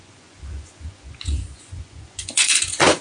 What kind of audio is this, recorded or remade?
remade